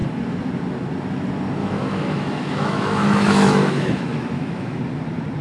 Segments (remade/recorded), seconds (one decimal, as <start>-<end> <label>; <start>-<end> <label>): 0.0-1.6 recorded; 1.6-4.8 remade; 4.8-5.4 recorded